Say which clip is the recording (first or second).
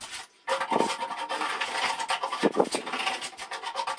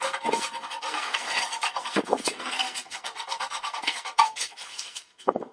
first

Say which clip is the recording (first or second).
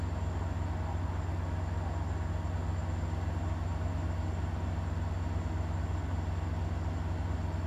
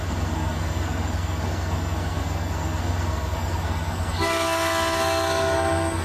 first